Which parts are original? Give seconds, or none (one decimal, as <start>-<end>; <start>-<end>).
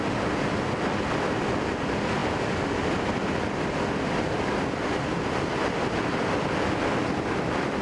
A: 0.0-7.8